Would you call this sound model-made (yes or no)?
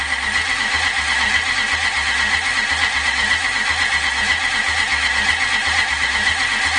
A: no